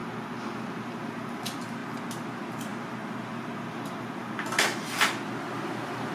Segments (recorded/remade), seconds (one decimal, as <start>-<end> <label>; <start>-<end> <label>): 0.0-6.1 recorded